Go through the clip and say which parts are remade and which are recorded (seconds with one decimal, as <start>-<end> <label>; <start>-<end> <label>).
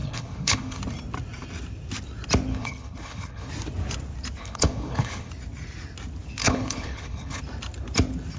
0.0-0.8 remade; 0.8-2.5 recorded; 2.5-3.5 remade; 3.5-4.4 recorded; 4.4-5.3 remade; 5.3-6.4 recorded; 6.4-7.4 remade; 7.4-8.4 recorded